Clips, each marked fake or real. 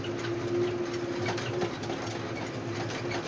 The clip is real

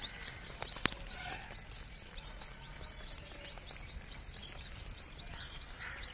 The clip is real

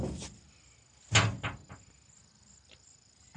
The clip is real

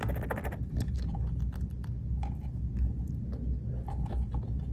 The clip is real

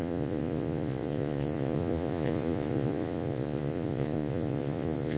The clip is fake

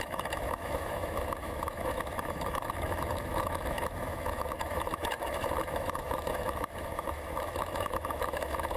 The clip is fake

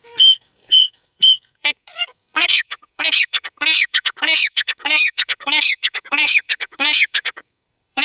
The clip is fake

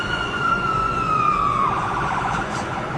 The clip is fake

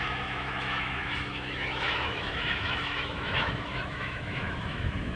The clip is fake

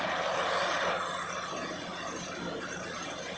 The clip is real